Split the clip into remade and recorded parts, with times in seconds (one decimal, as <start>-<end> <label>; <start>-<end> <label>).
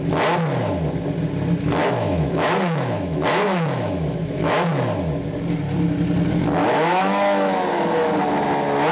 0.0-1.8 recorded; 1.8-4.7 remade; 4.7-6.6 recorded; 6.6-8.1 remade; 8.1-8.9 recorded